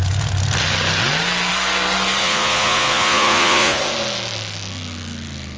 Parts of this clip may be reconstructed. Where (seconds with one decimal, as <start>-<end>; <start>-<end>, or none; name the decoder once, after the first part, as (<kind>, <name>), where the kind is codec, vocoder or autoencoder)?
2.2-3.8 (vocoder, Vocos)